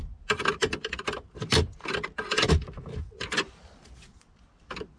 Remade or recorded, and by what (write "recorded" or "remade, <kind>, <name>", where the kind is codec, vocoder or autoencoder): recorded